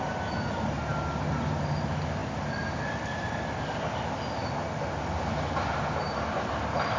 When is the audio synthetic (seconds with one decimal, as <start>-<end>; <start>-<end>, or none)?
none